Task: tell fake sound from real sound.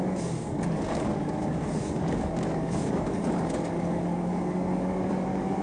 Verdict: fake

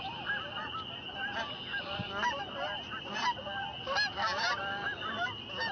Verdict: real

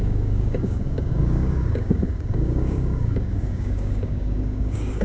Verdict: fake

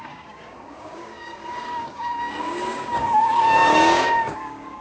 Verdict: fake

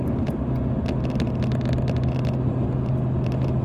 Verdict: real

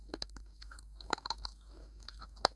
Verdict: fake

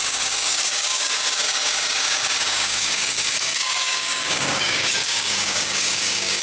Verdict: fake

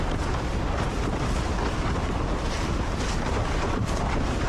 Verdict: real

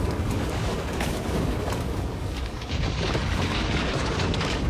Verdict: fake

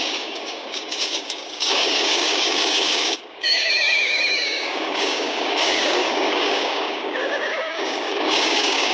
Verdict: fake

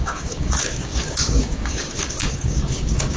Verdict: fake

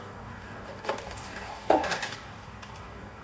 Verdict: fake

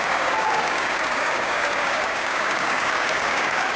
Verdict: fake